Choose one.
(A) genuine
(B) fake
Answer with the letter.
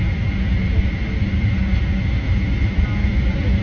A